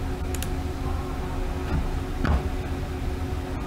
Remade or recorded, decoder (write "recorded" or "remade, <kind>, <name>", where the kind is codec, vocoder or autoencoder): recorded